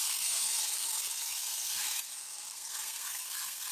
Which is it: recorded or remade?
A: remade